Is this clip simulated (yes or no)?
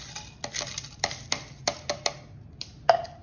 no